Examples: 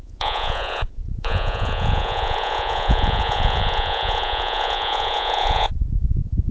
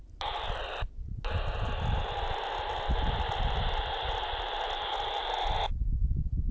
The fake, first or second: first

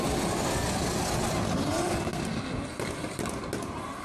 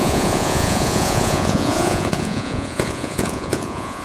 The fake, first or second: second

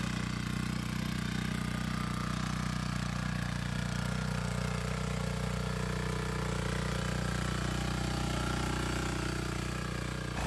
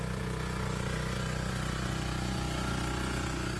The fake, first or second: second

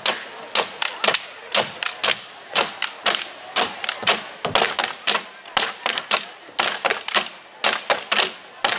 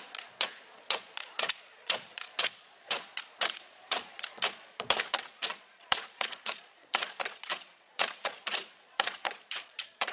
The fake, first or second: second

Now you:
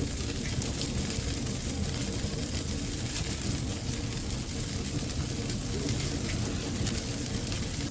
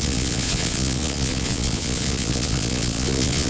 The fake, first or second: second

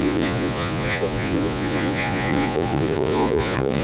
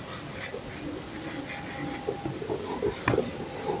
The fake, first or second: first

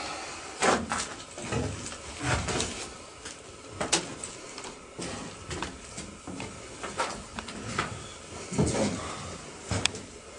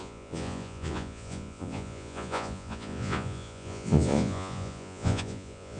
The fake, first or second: second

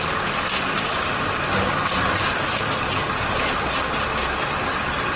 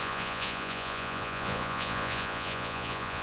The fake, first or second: second